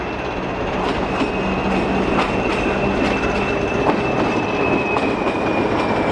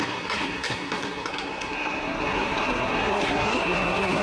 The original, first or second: first